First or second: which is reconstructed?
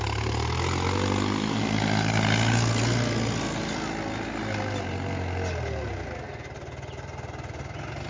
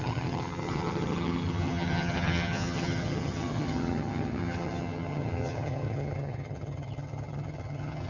second